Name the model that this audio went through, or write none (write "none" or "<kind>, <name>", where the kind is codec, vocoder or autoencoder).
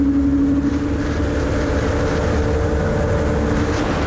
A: none